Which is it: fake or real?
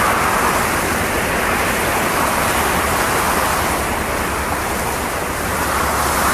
real